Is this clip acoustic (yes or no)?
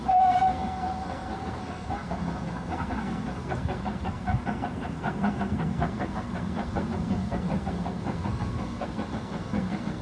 no